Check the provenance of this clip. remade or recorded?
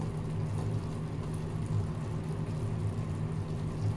recorded